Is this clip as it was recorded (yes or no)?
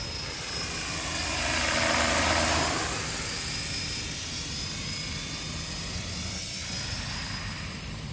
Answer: yes